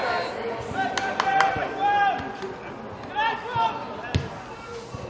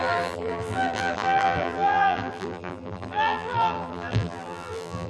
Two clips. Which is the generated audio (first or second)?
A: second